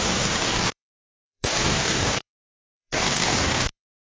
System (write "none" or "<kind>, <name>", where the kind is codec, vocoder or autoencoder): codec, DAC